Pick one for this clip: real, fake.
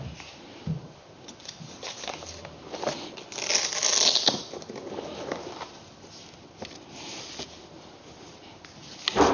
real